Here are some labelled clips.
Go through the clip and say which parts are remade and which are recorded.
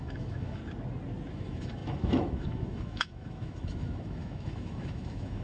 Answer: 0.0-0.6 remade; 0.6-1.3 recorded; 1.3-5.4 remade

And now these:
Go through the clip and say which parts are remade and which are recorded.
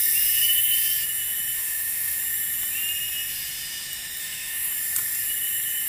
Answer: 0.0-1.6 recorded; 1.6-2.2 remade; 2.2-4.2 recorded; 4.2-4.7 remade; 4.7-5.9 recorded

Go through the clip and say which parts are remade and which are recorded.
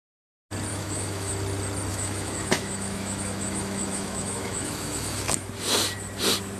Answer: 0.0-0.7 recorded; 0.7-1.3 remade; 1.3-1.9 recorded; 1.9-5.5 remade; 5.5-6.6 recorded